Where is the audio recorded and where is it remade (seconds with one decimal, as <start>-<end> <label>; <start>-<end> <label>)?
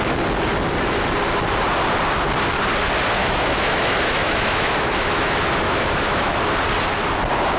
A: 0.0-3.2 recorded; 3.2-6.4 remade; 6.4-7.6 recorded